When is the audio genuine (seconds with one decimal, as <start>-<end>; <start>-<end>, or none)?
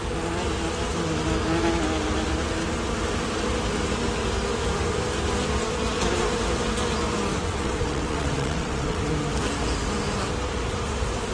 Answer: 0.0-7.4; 9.0-11.3